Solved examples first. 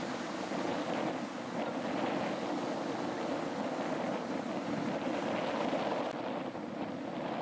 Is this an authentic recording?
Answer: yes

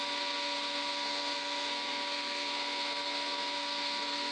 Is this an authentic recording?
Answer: no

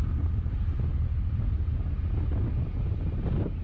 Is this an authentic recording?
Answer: yes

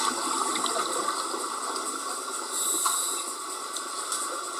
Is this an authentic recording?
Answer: yes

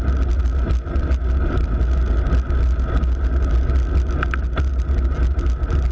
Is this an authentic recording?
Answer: yes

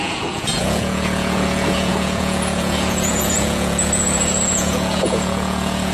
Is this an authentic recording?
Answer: no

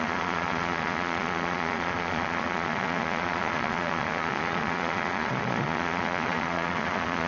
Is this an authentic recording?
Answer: no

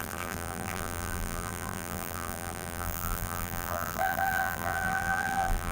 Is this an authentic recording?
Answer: no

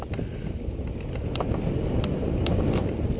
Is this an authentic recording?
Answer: yes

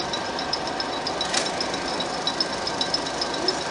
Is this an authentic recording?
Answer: yes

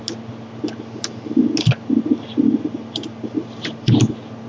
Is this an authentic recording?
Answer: yes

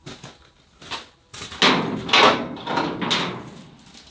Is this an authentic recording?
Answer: yes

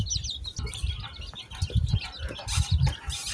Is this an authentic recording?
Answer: yes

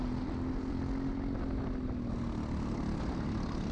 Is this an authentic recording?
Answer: yes